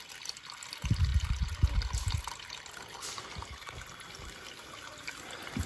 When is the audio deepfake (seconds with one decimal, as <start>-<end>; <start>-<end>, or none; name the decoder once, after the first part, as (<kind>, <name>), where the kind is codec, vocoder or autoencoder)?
none

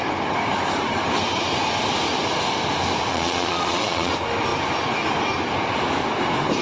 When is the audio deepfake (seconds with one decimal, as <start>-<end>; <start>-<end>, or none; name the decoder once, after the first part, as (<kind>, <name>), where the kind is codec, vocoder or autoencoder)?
3.1-4.1 (vocoder, Vocos)

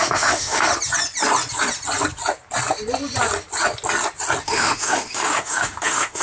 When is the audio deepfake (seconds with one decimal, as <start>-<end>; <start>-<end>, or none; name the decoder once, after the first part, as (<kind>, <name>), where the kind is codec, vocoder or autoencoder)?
0.0-0.7 (autoencoder, DAC-VAE); 4.4-6.2

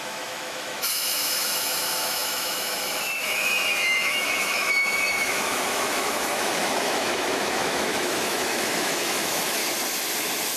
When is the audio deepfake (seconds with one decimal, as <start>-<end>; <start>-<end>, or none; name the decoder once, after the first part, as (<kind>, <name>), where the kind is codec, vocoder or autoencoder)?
0.0-9.6 (autoencoder, DAC-VAE)